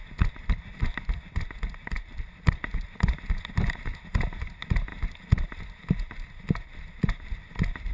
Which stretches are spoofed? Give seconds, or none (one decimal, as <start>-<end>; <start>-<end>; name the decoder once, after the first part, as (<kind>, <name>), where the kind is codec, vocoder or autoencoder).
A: none